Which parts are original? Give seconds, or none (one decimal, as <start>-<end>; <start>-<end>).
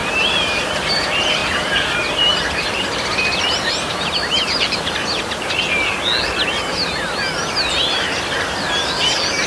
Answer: 0.7-1.4; 5.6-9.5